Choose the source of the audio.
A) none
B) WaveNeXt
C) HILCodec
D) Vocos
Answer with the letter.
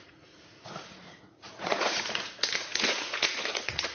D